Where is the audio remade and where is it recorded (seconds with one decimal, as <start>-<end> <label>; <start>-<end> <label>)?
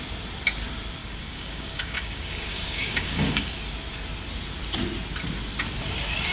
0.0-1.0 recorded; 1.0-3.5 remade; 3.5-6.3 recorded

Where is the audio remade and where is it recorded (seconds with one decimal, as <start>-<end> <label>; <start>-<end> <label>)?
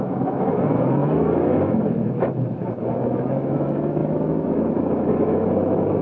0.0-6.0 remade